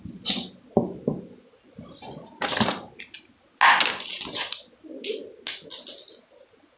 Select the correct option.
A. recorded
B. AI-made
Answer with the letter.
A